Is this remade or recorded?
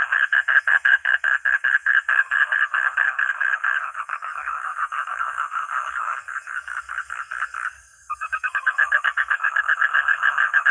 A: remade